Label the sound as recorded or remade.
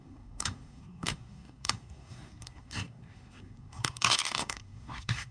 remade